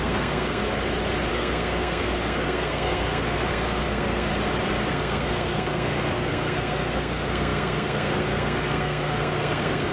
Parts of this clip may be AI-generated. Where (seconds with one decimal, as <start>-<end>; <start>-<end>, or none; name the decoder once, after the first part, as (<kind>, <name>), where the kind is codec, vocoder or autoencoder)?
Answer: 0.0-0.6 (codec, SNAC); 1.3-4.3; 4.9-9.9